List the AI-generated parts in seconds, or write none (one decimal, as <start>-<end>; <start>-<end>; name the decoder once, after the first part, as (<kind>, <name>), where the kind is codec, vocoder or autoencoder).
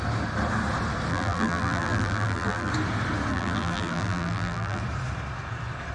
1.1-2.7 (vocoder, BigVGAN v2); 3.3-4.8